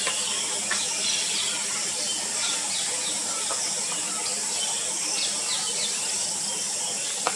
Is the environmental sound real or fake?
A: real